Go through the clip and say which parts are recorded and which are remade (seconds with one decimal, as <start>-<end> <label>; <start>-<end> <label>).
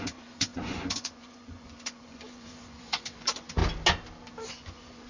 0.0-3.6 remade; 3.6-4.5 recorded; 4.5-5.1 remade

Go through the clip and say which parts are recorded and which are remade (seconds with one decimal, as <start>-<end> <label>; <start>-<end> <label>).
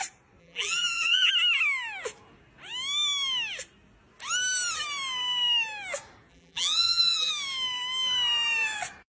0.0-0.4 recorded; 0.4-1.3 remade; 1.3-6.3 recorded; 6.3-7.3 remade; 7.3-9.2 recorded